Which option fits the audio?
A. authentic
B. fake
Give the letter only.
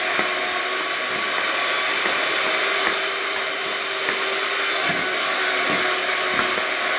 A